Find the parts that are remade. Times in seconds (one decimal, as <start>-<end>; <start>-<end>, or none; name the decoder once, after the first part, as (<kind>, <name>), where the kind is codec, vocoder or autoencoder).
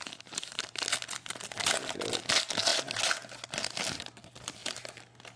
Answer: none